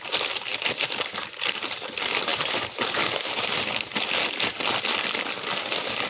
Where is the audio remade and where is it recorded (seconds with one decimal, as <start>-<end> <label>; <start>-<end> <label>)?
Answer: 0.0-2.3 recorded; 2.3-3.7 remade; 3.7-6.1 recorded